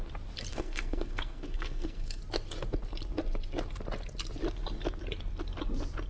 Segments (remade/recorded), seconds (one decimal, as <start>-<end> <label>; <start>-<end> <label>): 0.0-0.5 recorded; 0.5-2.2 remade; 2.2-6.1 recorded